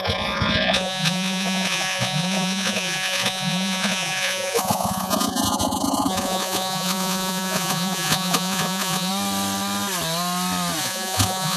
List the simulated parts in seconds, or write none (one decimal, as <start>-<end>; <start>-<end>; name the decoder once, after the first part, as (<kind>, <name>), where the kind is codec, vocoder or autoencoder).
0.0-9.1 (vocoder, Vocos); 10.8-11.6